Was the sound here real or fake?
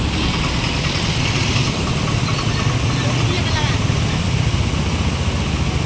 real